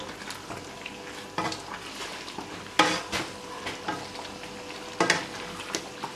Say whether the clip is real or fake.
real